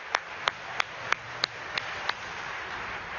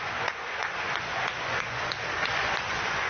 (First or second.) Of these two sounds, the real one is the first